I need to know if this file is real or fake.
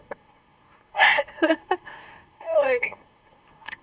fake